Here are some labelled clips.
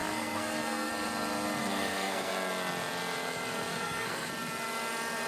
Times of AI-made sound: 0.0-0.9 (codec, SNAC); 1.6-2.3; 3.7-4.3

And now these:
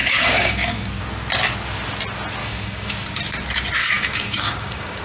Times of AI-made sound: 0.0-0.9 (codec, DAC); 2.4-2.9; 3.8-5.0

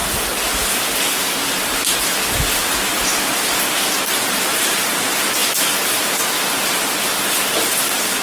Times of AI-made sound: none

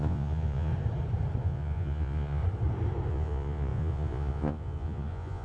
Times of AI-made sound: 0.0-0.7 (vocoder, Vocos); 1.4-2.4; 3.1-5.4

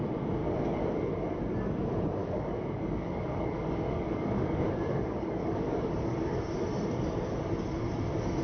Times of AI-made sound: 0.4-1.4 (codec, DAC); 2.2-6.4

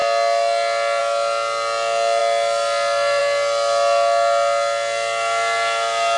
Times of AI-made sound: none